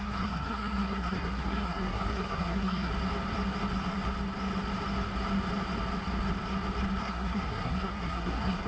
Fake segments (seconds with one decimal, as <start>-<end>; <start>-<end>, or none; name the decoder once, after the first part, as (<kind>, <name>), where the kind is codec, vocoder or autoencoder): 0.0-2.9 (codec, SNAC); 7.0-8.7